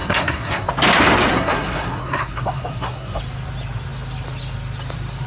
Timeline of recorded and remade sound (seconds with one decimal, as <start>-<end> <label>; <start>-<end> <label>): 0.0-0.7 remade; 0.7-1.3 recorded; 1.3-3.2 remade; 3.2-5.3 recorded